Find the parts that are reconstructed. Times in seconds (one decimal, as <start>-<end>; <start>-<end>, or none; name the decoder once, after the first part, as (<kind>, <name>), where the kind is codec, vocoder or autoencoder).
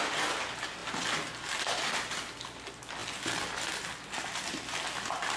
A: none